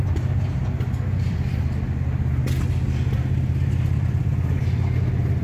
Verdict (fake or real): real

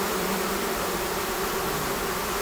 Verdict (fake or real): real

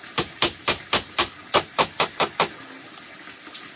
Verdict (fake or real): real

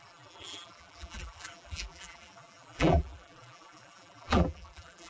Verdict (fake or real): fake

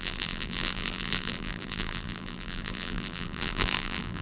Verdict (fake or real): fake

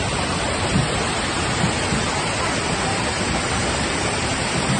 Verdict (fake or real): fake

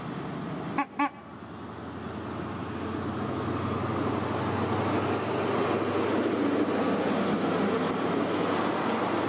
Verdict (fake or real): real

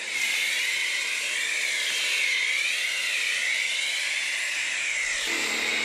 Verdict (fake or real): fake